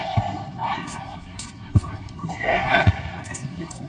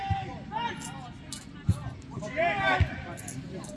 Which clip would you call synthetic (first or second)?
first